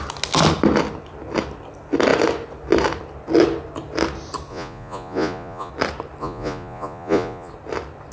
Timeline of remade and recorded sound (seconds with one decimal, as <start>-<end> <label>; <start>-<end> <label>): 0.0-4.5 recorded; 4.5-5.7 remade; 5.7-6.2 recorded; 6.2-7.5 remade; 7.5-8.1 recorded